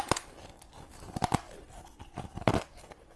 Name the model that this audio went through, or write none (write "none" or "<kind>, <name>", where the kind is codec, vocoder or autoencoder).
none